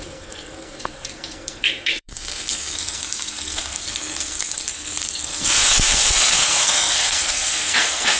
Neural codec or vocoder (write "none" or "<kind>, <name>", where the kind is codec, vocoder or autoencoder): codec, SNAC